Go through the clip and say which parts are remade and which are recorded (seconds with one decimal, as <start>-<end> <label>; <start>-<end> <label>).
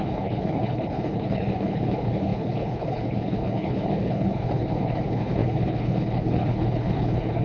0.0-7.4 remade